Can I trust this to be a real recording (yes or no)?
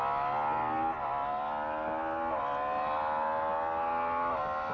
yes